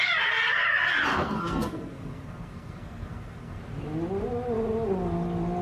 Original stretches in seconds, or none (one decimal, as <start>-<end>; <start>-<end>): 0.0-1.1; 3.6-5.6